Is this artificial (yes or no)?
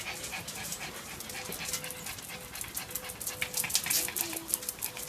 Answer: no